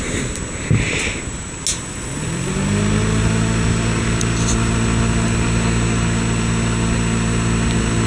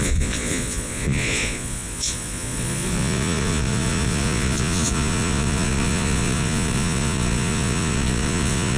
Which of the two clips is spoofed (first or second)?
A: second